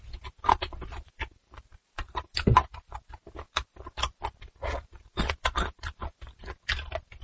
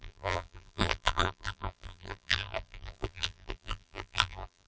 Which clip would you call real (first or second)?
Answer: first